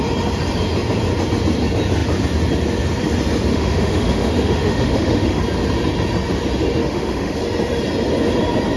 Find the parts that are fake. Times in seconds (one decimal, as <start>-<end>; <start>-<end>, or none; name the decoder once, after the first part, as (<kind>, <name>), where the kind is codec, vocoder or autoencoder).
3.5-5.4 (autoencoder, DAC-VAE); 6.8-7.4